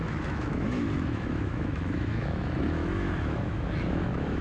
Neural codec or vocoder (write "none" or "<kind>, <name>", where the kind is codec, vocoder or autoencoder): autoencoder, DAC-VAE